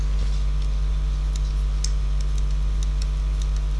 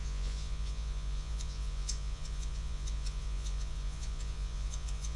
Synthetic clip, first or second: second